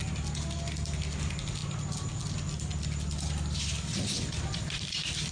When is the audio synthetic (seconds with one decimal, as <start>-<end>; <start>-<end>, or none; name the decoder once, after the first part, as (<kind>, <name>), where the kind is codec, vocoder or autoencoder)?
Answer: none